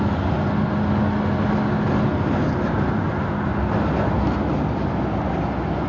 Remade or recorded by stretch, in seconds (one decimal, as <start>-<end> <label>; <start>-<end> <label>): 0.0-5.9 recorded